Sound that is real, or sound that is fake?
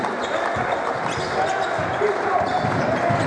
real